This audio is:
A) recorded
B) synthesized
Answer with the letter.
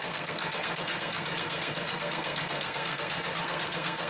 B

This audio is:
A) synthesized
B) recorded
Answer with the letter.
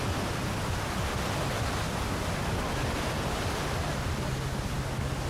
B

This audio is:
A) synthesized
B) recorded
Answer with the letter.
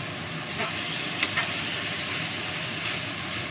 B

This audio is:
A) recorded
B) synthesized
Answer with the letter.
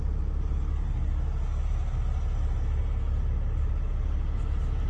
A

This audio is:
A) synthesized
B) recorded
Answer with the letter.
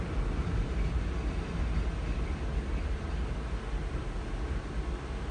B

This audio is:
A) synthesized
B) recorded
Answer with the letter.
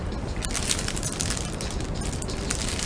B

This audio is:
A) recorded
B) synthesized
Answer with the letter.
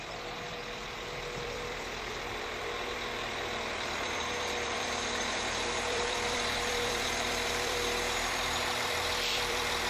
B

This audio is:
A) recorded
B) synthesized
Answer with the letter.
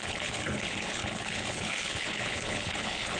B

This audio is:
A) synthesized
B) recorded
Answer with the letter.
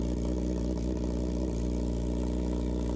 B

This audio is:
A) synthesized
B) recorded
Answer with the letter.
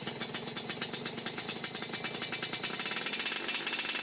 B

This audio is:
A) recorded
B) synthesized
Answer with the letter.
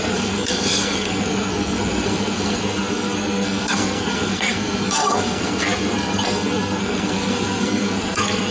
B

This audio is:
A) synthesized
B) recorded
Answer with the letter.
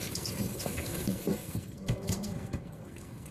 A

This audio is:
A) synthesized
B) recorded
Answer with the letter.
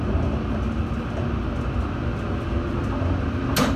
B